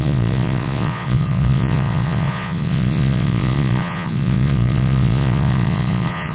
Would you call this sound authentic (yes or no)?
no